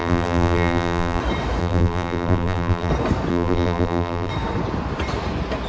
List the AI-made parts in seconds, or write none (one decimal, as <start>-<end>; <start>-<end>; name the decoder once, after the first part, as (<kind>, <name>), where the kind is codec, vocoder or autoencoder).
0.0-1.2 (vocoder, BigVGAN v2); 1.6-2.9; 3.3-4.3